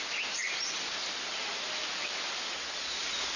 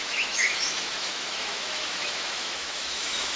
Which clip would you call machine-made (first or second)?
second